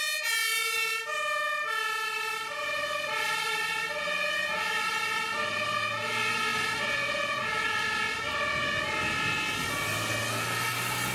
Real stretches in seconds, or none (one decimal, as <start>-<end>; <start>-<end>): 0.0-0.5; 3.7-6.5; 7.3-11.1